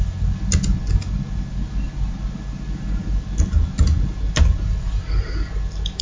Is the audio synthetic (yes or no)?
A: no